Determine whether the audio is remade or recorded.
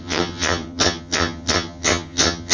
remade